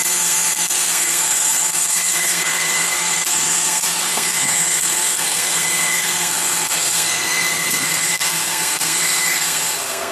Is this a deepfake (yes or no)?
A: yes